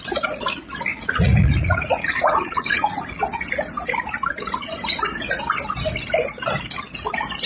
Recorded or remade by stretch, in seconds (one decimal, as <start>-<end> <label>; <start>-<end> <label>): 0.0-0.9 recorded; 0.9-3.2 remade; 3.2-7.5 recorded